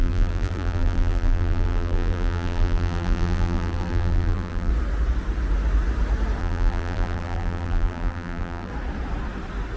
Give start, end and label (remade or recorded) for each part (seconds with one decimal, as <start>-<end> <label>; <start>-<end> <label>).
0.0-4.7 remade; 4.7-6.4 recorded; 6.4-8.7 remade; 8.7-9.8 recorded